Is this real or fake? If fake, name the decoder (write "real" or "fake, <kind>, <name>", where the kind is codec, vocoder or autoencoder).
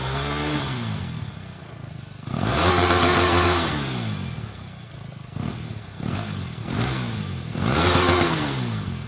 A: fake, codec, SNAC